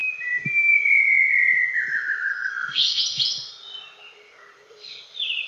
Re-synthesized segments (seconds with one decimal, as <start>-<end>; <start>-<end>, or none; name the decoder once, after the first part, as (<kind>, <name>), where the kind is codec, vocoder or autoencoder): 2.3-3.0 (codec, SNAC)